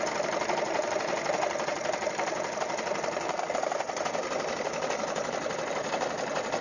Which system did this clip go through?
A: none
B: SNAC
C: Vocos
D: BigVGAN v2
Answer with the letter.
A